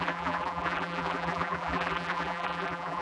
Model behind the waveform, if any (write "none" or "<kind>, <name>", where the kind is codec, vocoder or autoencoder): vocoder, BigVGAN v2